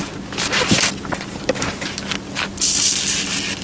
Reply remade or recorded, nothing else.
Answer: recorded